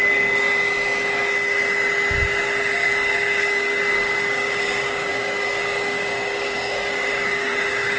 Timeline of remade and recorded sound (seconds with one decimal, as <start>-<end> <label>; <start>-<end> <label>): 0.0-0.4 remade; 0.4-2.6 recorded; 2.6-8.0 remade